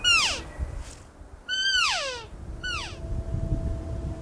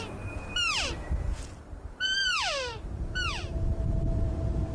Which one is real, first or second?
first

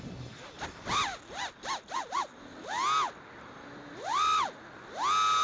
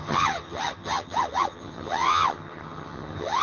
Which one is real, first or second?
first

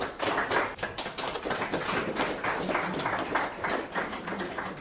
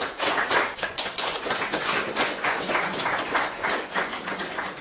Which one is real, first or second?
first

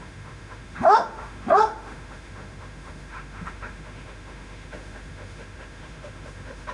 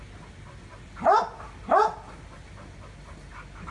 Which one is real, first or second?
second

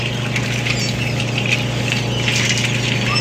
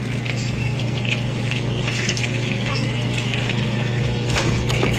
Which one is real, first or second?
first